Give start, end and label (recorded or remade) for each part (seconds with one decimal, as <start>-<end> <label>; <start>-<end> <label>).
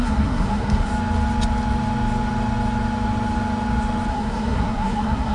0.0-0.9 remade; 0.9-4.1 recorded; 4.1-5.3 remade